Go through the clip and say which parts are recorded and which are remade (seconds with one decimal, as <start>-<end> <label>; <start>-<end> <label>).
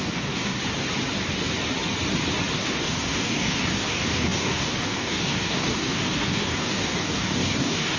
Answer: 0.0-0.6 remade; 0.6-2.6 recorded; 2.6-8.0 remade